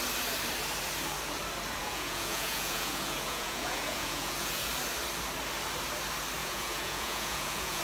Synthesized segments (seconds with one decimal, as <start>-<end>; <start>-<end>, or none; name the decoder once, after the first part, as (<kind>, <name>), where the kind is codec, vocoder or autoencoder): 1.8-4.7 (vocoder, Vocos); 6.4-7.8